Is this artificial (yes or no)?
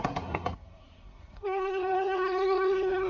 yes